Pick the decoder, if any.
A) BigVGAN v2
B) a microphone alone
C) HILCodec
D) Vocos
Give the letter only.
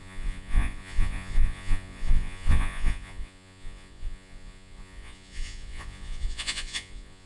D